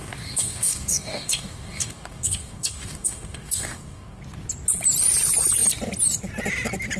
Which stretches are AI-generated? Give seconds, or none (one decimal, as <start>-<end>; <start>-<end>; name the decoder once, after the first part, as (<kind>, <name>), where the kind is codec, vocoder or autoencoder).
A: 0.0-4.2 (codec, DAC)